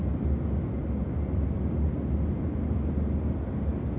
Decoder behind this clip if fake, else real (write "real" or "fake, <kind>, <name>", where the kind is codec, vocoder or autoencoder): real